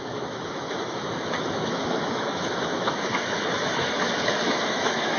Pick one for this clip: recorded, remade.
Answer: remade